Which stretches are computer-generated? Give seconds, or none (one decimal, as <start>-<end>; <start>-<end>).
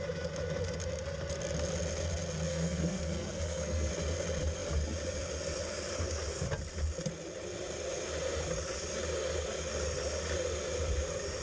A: 2.5-3.9